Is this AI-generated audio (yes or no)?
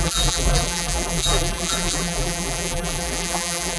yes